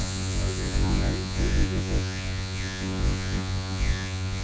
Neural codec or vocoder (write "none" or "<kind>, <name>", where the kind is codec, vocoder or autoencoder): vocoder, Vocos